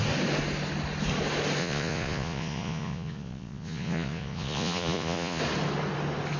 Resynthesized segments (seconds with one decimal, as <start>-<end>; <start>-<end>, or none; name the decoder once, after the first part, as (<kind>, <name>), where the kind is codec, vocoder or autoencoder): 1.6-5.4 (vocoder, Vocos)